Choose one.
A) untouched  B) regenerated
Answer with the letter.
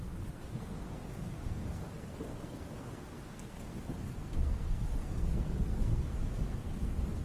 B